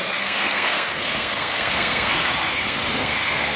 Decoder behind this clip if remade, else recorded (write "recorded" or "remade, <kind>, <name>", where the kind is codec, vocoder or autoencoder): remade, codec, SNAC